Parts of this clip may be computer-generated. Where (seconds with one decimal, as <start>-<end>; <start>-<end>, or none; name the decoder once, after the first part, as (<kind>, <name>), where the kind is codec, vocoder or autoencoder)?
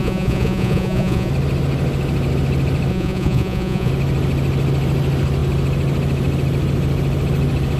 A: 0.0-1.3 (vocoder, Vocos); 2.9-3.9